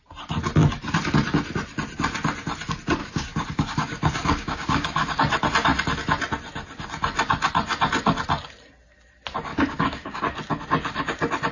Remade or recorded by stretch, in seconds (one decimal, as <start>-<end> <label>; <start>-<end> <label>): 0.0-3.0 recorded; 3.0-5.2 remade; 5.2-9.5 recorded; 9.5-10.2 remade; 10.2-11.5 recorded